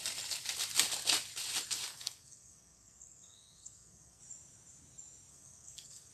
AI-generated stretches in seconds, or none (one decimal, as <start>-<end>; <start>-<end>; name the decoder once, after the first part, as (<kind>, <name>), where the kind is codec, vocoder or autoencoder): 1.9-4.2 (codec, SNAC); 5.3-6.1